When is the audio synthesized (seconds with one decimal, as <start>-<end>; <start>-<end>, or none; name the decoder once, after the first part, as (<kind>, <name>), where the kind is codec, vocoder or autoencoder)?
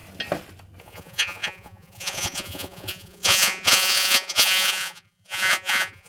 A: 0.8-6.1 (vocoder, Vocos)